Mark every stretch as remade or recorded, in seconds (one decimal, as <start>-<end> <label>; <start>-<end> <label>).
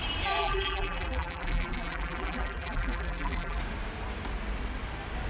0.0-0.4 recorded; 0.4-3.6 remade; 3.6-5.3 recorded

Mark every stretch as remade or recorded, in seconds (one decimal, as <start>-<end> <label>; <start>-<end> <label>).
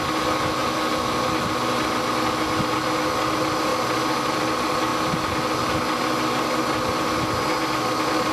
0.0-8.3 recorded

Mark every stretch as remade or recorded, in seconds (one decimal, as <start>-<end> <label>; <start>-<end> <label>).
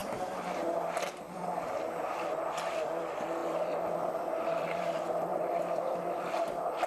0.0-6.9 remade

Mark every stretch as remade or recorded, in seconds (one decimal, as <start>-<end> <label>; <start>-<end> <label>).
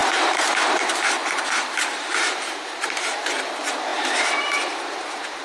0.0-3.2 remade; 3.2-3.9 recorded; 3.9-5.4 remade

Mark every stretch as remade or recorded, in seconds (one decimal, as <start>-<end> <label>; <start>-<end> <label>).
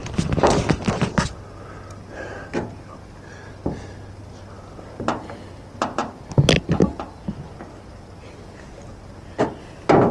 0.0-10.1 recorded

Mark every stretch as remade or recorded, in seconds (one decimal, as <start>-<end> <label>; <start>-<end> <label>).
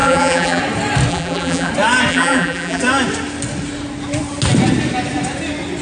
0.0-0.6 remade; 0.6-1.1 recorded; 1.1-1.7 remade; 1.7-2.1 recorded; 2.1-2.8 remade; 2.8-5.8 recorded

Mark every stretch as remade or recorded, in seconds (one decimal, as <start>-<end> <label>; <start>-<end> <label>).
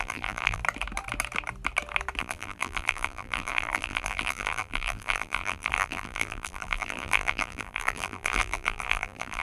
0.0-0.6 remade; 0.6-2.2 recorded; 2.2-9.4 remade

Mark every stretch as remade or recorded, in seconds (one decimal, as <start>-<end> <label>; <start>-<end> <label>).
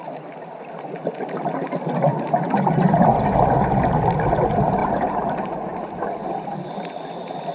0.0-2.1 recorded; 2.1-3.5 remade; 3.5-4.8 recorded; 4.8-6.0 remade; 6.0-7.5 recorded